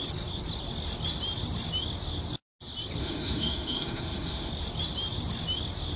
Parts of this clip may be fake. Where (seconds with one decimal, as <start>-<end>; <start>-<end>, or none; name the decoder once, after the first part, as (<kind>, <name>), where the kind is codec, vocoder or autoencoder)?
3.0-4.5 (autoencoder, DAC-VAE)